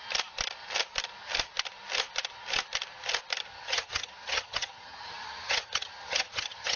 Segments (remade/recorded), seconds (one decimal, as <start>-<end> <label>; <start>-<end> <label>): 0.0-3.5 recorded; 3.5-6.8 remade